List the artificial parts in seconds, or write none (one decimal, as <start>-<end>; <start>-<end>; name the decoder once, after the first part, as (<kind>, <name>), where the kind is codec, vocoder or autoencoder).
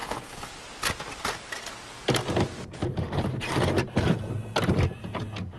0.0-0.5 (codec, HILCodec)